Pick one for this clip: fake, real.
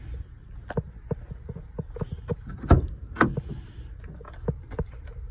real